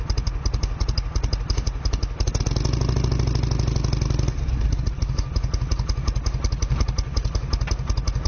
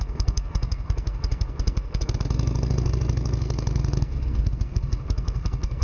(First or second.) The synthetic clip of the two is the second